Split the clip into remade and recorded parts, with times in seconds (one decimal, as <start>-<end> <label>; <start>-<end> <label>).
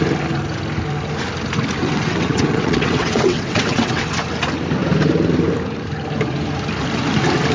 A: 0.0-1.8 recorded; 1.8-4.1 remade; 4.1-7.5 recorded